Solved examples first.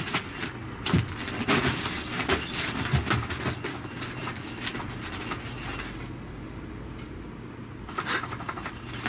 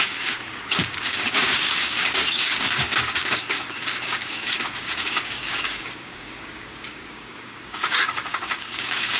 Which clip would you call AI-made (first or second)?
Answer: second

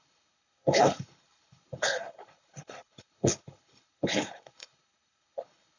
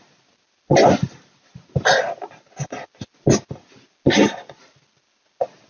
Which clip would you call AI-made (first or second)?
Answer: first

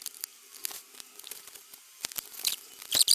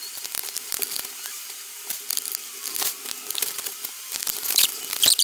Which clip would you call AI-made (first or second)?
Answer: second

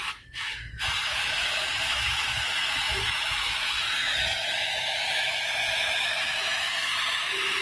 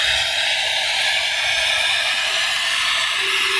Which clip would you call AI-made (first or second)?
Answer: first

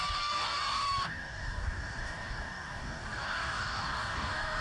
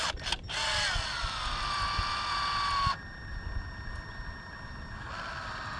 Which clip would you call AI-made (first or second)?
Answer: first